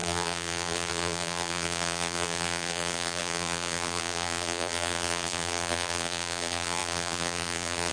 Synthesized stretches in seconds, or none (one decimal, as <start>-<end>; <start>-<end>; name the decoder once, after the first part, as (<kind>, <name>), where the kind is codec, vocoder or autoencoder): 0.0-7.9 (vocoder, BigVGAN v2)

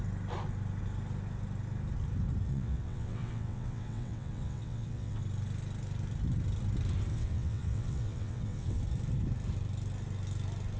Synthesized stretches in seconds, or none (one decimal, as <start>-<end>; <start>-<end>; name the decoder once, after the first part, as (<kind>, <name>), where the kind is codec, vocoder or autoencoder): 2.5-5.2 (vocoder, WaveNeXt); 7.1-8.8